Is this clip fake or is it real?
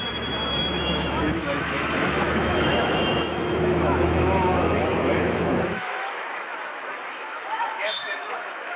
fake